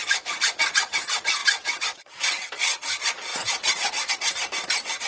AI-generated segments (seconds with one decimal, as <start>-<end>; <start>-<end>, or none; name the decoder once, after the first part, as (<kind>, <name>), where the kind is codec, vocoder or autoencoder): 1.4-2.5 (vocoder, WaveNeXt); 3.3-4.1